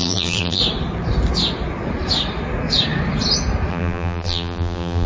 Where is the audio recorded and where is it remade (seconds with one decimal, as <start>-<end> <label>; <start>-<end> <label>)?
0.0-0.6 remade; 0.6-3.7 recorded; 3.7-5.1 remade